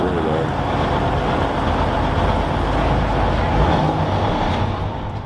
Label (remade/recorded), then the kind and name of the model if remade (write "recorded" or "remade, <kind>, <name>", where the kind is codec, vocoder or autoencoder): recorded